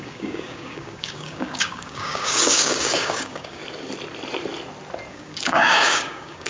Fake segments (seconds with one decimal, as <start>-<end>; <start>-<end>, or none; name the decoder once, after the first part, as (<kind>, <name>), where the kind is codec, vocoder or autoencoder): 0.0-3.6 (codec, DAC); 5.1-6.5